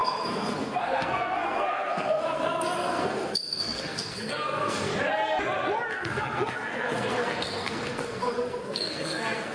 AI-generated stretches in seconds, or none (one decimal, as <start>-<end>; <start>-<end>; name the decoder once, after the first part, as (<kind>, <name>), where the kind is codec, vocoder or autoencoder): 0.0-4.9 (codec, SNAC); 5.9-9.5